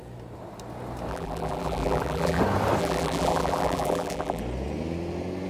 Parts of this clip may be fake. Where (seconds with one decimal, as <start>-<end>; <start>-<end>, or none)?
1.1-2.4; 2.8-4.4